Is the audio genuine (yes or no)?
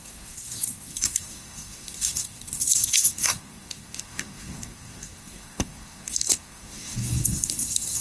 no